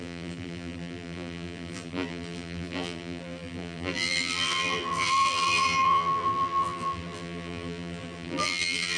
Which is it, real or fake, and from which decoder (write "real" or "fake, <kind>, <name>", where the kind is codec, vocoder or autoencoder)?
fake, vocoder, BigVGAN v2